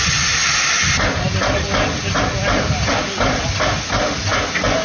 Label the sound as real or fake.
real